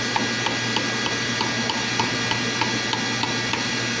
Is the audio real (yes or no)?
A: yes